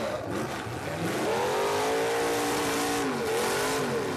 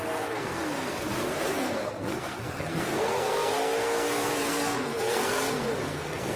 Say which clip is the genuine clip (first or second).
first